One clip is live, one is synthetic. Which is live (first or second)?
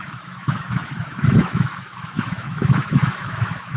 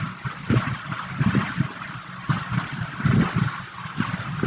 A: second